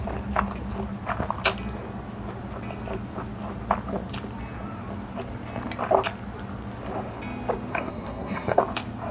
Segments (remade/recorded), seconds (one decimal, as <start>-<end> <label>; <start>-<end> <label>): 0.0-7.7 recorded; 7.7-8.6 remade; 8.6-9.1 recorded